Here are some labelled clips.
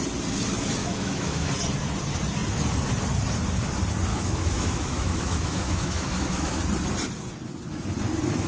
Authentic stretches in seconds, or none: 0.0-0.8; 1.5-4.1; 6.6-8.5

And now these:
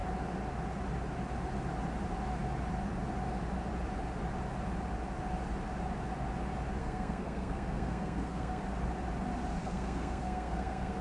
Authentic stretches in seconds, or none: 0.0-6.8; 8.6-9.6